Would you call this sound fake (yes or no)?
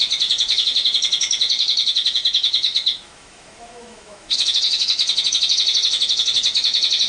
yes